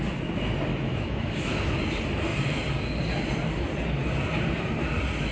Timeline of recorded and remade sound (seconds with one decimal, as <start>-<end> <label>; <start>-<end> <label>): 0.0-0.7 recorded; 0.7-1.7 remade; 1.7-5.3 recorded